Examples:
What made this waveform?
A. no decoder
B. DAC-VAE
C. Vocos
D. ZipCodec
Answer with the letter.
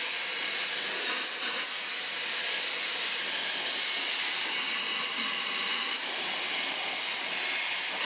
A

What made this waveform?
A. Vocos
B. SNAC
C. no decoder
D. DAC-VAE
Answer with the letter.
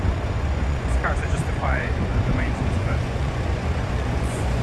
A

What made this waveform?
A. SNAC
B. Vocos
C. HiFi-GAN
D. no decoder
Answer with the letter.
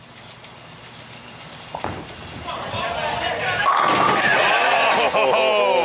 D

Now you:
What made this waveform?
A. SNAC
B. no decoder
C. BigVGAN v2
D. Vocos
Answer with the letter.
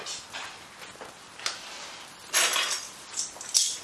B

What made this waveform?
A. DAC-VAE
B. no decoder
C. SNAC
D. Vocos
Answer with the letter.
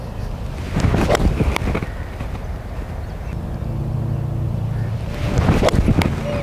B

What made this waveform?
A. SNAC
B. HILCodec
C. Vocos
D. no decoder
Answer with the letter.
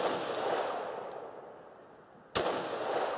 D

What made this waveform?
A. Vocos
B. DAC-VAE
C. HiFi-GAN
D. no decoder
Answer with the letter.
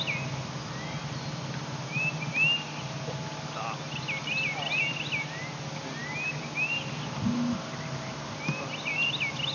D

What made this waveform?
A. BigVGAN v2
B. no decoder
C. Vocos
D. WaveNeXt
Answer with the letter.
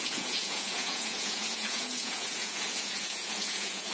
C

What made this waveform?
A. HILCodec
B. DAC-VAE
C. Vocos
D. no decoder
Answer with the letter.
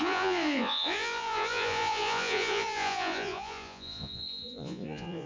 C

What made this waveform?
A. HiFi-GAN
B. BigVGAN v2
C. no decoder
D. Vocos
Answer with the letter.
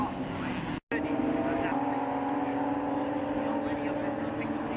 C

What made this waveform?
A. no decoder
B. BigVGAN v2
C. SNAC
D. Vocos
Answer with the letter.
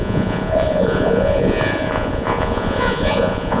D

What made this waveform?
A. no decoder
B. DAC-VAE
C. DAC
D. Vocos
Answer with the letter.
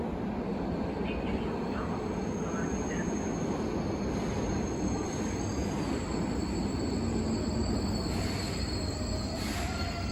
A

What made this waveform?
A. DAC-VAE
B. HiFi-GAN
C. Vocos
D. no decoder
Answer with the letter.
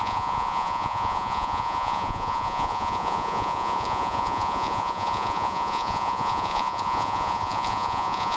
C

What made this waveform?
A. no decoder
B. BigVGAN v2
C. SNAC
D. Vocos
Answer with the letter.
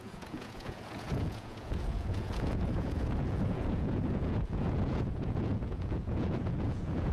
D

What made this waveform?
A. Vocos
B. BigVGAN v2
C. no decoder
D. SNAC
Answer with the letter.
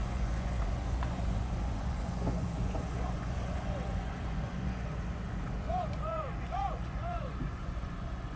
A